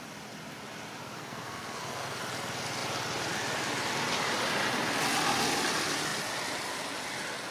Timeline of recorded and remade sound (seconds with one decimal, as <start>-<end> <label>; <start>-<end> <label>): 0.0-1.0 recorded; 1.0-2.2 remade; 2.2-7.5 recorded

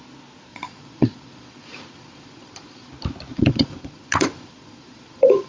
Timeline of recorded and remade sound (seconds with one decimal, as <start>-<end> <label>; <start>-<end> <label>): 0.0-0.5 recorded; 0.5-2.9 remade; 2.9-3.3 recorded; 3.3-5.5 remade

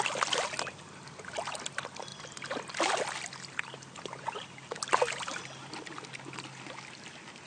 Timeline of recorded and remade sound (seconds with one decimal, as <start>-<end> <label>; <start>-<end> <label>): 0.0-7.5 recorded

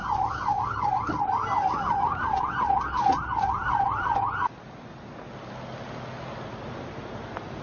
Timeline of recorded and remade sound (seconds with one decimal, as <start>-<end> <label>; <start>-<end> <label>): 0.0-3.6 recorded; 3.6-4.3 remade; 4.3-7.6 recorded

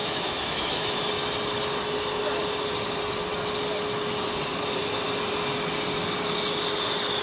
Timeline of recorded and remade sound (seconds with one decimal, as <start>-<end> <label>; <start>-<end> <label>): 0.0-1.1 remade; 1.1-7.2 recorded

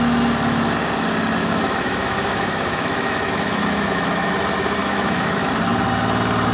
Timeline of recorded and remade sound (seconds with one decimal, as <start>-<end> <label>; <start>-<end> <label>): 0.0-1.4 recorded; 1.4-4.3 remade; 4.3-4.8 recorded; 4.8-5.5 remade; 5.5-6.5 recorded

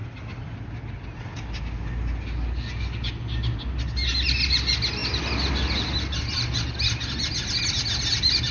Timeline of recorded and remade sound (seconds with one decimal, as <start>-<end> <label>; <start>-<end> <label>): 0.0-8.5 recorded